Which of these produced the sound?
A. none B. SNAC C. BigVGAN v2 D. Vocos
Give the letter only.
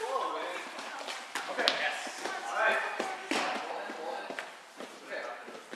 A